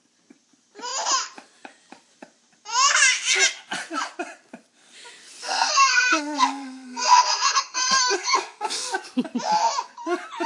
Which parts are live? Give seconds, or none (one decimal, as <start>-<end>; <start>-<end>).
0.0-5.4; 8.9-10.5